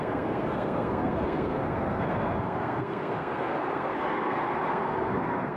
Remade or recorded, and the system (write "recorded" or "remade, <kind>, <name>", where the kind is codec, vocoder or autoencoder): remade, codec, SNAC